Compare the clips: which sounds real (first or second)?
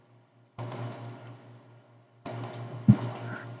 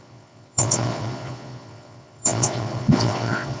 first